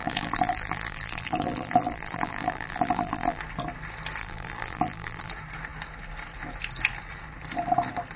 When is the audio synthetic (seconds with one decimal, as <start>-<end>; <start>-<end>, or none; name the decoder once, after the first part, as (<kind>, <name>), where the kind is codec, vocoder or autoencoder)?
0.0-3.4 (vocoder, BigVGAN v2); 4.2-5.3